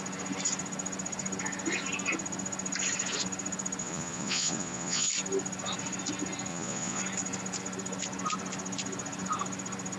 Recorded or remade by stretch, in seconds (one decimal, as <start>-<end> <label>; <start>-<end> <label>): 0.0-3.8 recorded; 3.8-5.1 remade; 5.1-6.5 recorded; 6.5-7.0 remade; 7.0-10.0 recorded